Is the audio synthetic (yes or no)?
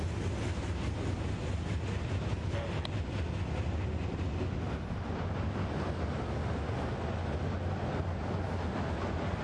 no